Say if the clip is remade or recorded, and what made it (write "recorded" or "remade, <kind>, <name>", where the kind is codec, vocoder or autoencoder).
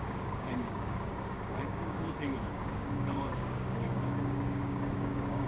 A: remade, codec, DAC